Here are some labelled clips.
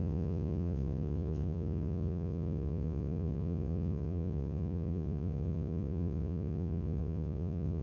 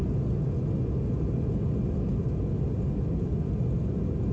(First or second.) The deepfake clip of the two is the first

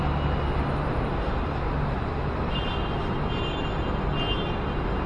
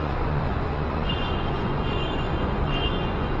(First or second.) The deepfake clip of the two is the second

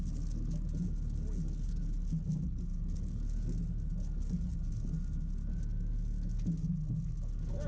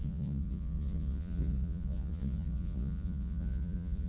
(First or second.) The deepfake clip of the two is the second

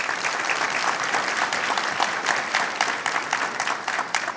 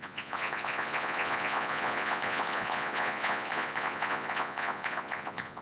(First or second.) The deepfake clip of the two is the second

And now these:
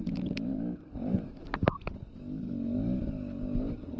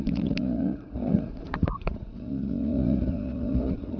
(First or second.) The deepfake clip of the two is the second